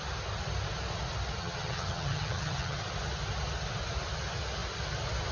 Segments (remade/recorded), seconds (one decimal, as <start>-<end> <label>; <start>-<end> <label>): 0.0-1.4 recorded; 1.4-2.8 remade; 2.8-5.3 recorded